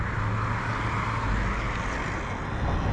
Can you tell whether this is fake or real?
real